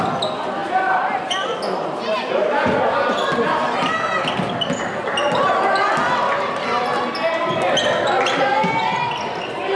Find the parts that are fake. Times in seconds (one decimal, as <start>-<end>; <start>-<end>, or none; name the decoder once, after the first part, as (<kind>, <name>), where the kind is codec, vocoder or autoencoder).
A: 0.6-3.9 (vocoder, BigVGAN v2)

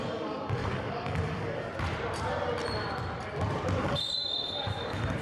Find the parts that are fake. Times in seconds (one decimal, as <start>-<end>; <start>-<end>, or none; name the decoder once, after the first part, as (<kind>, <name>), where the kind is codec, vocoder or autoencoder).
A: 0.0-1.7 (codec, DAC); 3.8-5.2

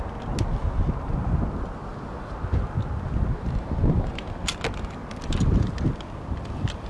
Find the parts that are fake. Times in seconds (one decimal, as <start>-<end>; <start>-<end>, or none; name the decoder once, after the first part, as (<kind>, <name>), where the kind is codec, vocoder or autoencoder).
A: none

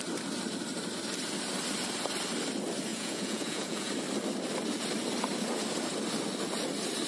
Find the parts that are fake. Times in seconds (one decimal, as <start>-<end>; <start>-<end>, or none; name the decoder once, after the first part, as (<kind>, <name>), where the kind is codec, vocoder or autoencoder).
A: 2.9-3.9 (vocoder, Vocos)

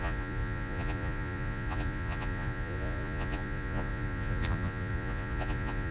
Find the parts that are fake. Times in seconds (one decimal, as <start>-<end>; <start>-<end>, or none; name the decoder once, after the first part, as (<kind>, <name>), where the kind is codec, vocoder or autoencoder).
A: 0.0-5.9 (vocoder, Vocos)